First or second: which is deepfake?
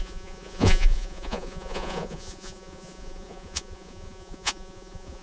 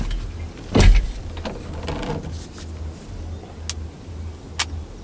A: first